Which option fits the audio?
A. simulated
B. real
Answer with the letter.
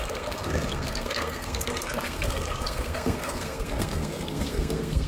A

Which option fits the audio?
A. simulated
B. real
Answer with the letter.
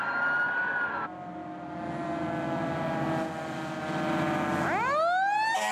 B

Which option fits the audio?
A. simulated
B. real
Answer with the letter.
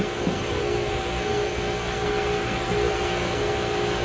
A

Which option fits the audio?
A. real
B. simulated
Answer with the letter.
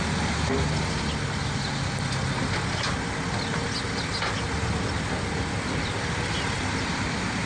A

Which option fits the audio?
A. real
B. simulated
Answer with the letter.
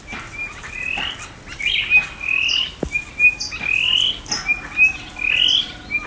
A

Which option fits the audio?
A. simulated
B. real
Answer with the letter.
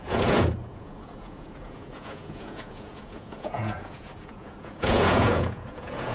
A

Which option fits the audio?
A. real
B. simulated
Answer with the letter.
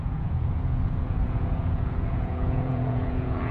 B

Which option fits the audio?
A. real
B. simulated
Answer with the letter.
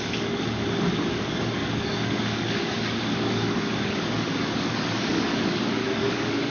B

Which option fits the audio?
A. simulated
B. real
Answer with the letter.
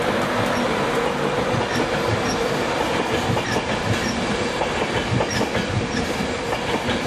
B